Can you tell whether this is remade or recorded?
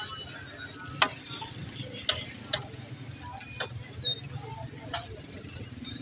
recorded